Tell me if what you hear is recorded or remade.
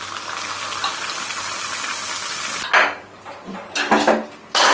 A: recorded